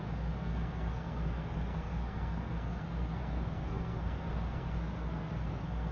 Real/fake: fake